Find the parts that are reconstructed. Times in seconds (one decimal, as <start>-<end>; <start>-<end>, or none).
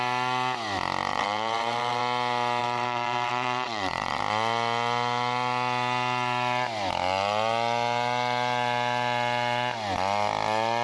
1.1-2.0; 2.6-4.2